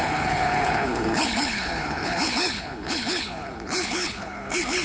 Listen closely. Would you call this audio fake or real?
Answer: fake